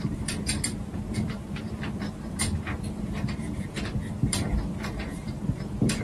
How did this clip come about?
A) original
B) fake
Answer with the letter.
B